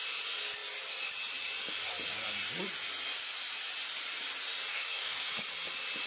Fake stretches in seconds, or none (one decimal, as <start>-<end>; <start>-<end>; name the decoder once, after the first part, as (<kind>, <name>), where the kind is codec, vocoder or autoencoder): 4.7-5.3 (codec, DAC)